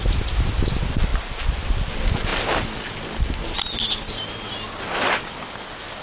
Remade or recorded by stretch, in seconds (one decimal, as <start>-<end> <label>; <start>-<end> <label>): 0.0-6.0 recorded